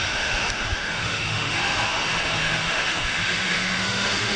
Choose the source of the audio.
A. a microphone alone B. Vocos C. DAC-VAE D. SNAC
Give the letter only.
C